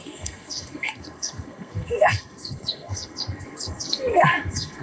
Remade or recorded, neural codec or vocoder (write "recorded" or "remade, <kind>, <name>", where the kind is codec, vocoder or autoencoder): remade, codec, SNAC